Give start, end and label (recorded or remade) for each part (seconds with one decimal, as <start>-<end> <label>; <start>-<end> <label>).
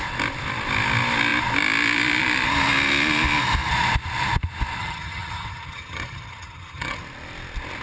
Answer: 0.0-4.8 recorded; 4.8-7.0 remade; 7.0-7.8 recorded